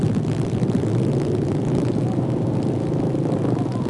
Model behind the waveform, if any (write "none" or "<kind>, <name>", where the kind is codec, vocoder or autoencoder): none